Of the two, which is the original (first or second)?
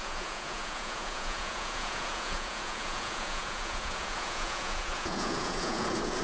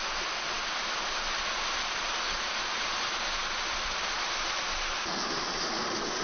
second